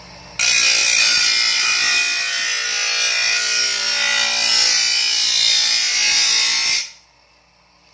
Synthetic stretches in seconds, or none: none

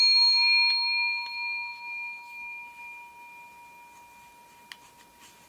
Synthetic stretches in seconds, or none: none